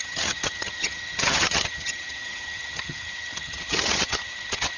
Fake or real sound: fake